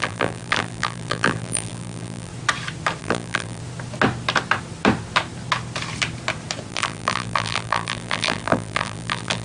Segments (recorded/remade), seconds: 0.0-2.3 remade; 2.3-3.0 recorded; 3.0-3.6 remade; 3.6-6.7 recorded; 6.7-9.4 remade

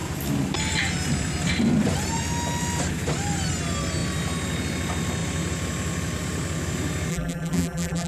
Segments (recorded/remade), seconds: 0.0-7.1 recorded; 7.1-8.1 remade

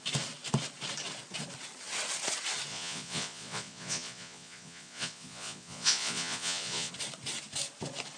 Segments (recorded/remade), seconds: 0.0-2.7 recorded; 2.7-6.9 remade; 6.9-8.2 recorded